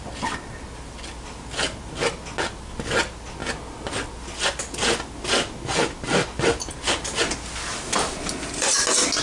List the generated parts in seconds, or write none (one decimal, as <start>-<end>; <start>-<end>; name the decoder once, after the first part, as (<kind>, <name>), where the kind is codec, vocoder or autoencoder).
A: none